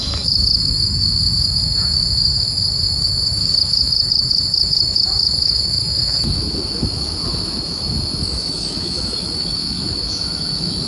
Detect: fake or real fake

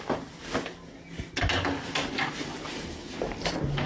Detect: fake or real real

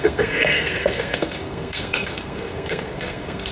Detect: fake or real fake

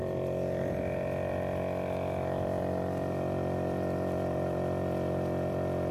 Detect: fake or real fake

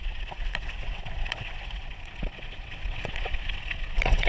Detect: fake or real fake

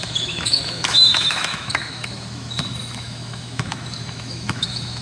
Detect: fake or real fake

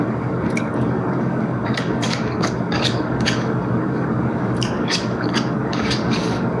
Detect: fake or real fake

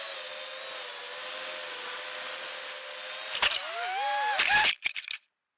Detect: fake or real real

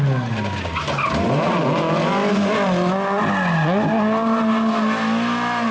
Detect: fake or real real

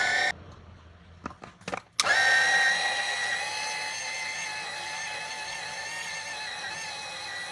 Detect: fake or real real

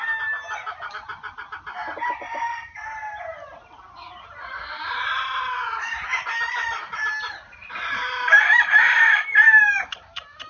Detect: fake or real real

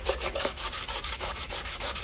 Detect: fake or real fake